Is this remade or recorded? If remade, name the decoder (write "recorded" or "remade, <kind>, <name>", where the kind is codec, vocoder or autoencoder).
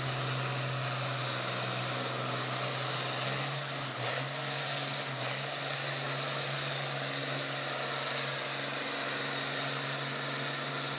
recorded